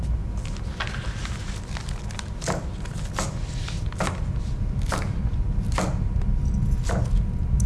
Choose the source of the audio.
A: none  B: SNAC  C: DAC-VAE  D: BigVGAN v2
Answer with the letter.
A